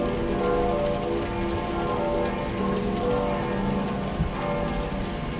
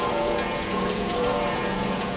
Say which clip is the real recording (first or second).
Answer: first